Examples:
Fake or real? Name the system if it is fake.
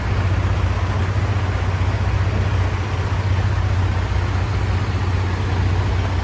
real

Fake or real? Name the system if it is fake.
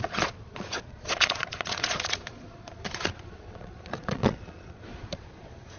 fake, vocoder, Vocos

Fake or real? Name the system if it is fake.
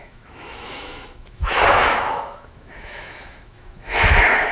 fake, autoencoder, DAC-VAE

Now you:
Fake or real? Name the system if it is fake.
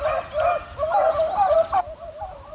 real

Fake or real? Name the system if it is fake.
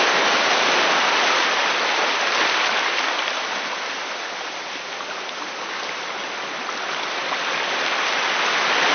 real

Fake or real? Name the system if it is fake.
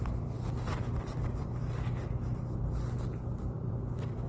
real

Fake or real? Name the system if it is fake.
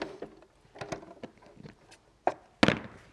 real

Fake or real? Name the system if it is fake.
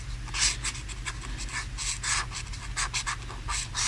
real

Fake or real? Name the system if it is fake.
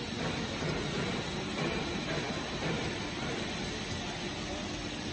real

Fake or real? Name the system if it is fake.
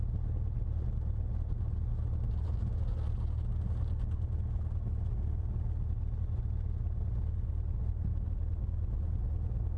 real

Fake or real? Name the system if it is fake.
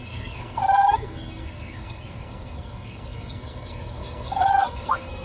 fake, codec, SNAC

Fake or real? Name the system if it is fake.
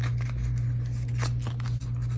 real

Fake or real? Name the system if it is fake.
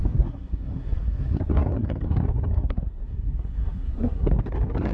fake, codec, SNAC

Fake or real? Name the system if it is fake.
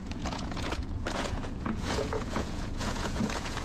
fake, vocoder, Vocos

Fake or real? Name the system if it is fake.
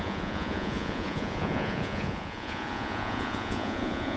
fake, vocoder, Vocos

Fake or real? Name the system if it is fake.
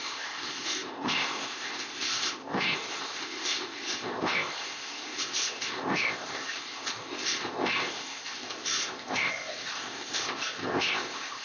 fake, codec, ZipCodec